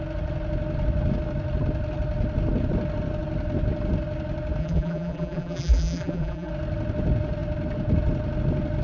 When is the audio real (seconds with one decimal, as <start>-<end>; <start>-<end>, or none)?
0.0-4.6; 6.5-8.8